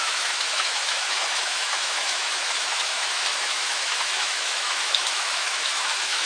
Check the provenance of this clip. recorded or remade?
remade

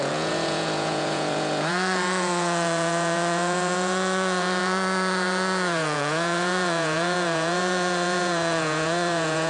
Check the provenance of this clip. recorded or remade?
remade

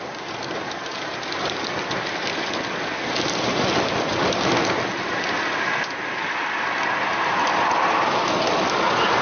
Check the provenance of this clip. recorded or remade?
recorded